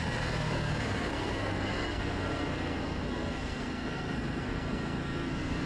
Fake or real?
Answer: fake